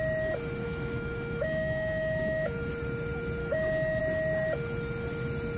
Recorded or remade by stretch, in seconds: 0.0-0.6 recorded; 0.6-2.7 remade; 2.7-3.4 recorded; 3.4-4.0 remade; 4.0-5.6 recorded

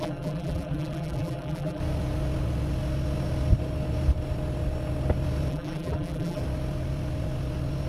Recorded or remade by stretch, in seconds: 0.0-1.8 remade; 1.8-5.5 recorded; 5.5-6.4 remade; 6.4-7.9 recorded

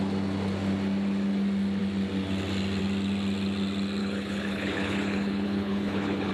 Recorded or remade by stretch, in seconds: 0.0-4.0 recorded; 4.0-6.3 remade